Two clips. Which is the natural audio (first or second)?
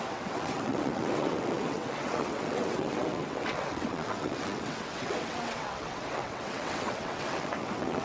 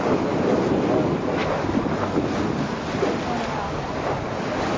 second